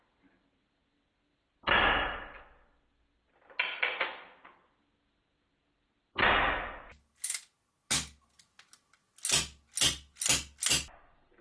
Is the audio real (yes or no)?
yes